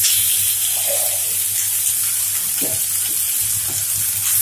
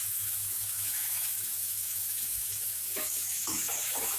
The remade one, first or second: second